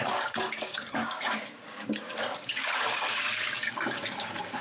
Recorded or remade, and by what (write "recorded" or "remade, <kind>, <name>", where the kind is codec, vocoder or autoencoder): remade, codec, DAC